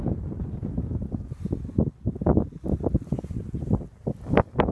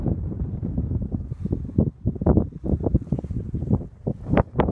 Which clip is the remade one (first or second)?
second